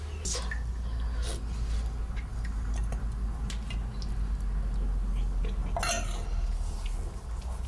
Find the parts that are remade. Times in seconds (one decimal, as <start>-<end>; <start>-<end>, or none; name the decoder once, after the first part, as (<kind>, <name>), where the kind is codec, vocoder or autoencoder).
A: none